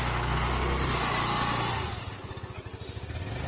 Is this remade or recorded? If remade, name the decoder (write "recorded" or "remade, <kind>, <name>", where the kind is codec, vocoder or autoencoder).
recorded